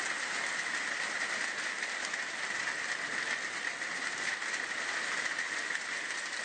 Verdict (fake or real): real